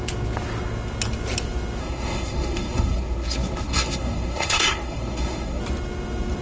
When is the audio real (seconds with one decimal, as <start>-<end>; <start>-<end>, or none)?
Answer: 0.0-1.8; 5.6-6.4